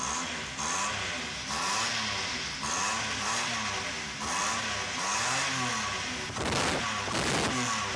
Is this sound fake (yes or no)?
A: no